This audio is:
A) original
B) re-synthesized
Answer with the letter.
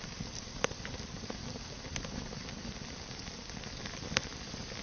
B